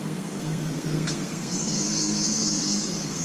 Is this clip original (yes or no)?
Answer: no